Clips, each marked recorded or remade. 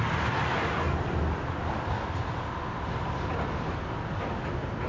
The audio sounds recorded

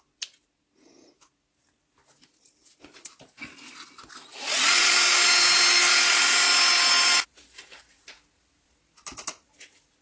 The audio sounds recorded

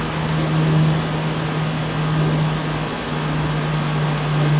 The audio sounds recorded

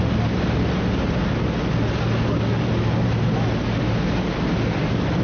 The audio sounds recorded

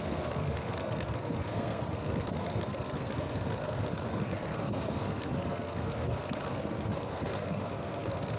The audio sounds remade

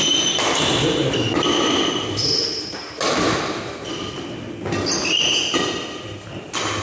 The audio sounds recorded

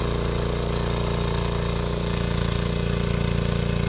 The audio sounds recorded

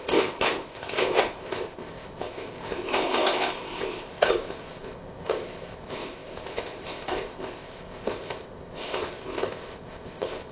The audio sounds remade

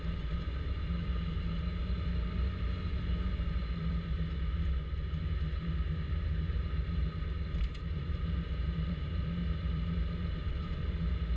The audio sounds remade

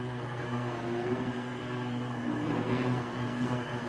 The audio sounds remade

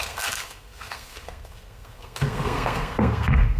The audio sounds remade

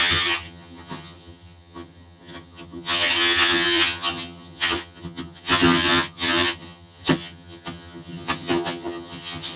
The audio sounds remade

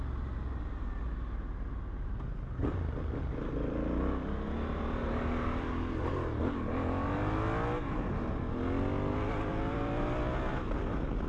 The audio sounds recorded